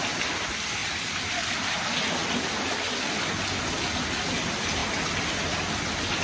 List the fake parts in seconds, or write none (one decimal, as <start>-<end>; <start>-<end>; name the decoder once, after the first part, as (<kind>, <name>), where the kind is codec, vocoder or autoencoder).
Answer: 2.2-3.2 (vocoder, BigVGAN v2)